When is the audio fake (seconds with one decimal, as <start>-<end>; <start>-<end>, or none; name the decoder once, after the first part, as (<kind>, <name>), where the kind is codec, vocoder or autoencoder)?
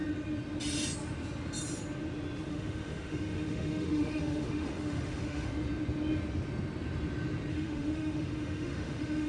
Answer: 2.5-5.5 (autoencoder, DAC-VAE); 7.5-9.3